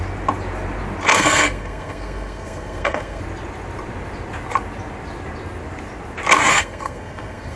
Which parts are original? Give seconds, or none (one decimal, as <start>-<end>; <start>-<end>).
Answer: 0.0-1.1; 3.2-6.5